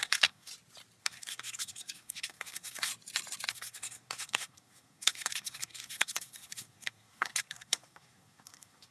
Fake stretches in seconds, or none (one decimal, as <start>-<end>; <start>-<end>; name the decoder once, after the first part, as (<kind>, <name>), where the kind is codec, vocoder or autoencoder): 0.0-0.5 (codec, SNAC); 1.0-2.9; 3.5-8.9